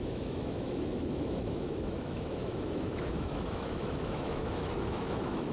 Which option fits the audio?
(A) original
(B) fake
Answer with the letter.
B